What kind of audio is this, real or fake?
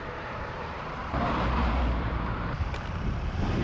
fake